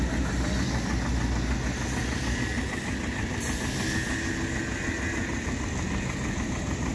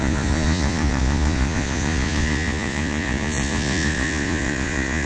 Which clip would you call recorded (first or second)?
first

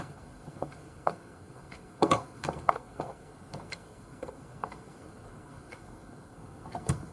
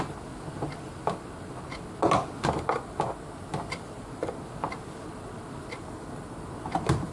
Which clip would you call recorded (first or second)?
second